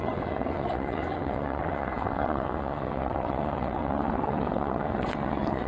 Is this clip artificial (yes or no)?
yes